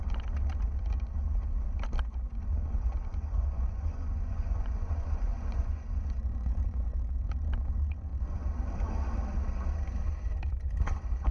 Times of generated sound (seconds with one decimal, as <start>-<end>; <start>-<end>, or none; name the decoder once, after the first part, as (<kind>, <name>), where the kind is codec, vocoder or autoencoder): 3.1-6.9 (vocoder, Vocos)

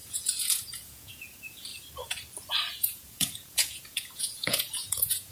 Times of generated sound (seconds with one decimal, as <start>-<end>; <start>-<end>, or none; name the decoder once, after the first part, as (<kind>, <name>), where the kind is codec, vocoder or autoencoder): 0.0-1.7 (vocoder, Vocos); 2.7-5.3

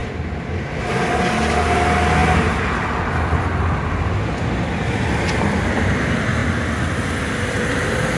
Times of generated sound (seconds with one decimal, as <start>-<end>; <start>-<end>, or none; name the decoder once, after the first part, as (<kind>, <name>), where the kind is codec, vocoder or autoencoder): none

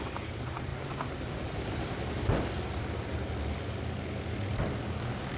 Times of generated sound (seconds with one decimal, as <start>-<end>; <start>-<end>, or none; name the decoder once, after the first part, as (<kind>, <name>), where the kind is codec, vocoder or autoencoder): none